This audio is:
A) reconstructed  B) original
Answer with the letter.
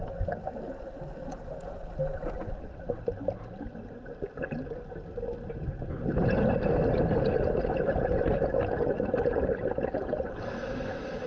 B